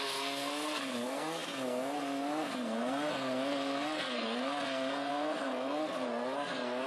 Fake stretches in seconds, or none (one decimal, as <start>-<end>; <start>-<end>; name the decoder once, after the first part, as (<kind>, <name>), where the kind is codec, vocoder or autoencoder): 0.0-6.9 (codec, SNAC)